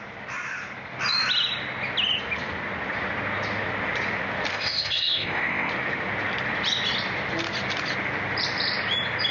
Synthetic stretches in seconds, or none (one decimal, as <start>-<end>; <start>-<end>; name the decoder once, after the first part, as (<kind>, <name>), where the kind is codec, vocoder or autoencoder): 4.5-5.7 (codec, ZipCodec)